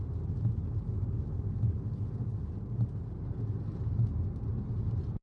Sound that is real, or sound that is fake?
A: real